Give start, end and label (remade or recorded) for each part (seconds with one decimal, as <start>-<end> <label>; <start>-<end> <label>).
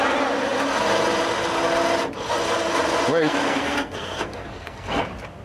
0.0-3.2 recorded; 3.2-5.0 remade; 5.0-5.4 recorded